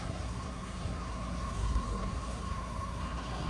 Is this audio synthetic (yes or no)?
yes